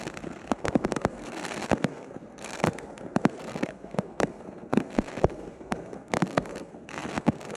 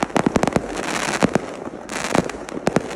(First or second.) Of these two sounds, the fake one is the first